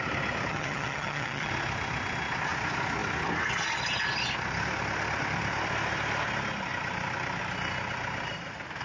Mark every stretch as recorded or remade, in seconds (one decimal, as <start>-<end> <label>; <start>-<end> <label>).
0.0-0.5 recorded; 0.5-1.5 remade; 1.5-8.8 recorded